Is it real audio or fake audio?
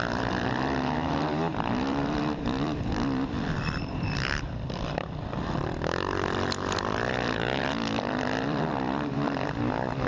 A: fake